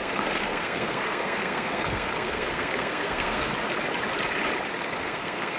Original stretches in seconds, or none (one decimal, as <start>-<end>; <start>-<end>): 3.5-4.9